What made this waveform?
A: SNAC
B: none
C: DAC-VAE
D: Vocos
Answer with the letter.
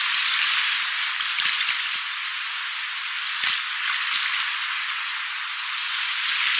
B